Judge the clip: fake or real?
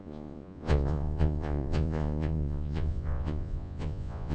fake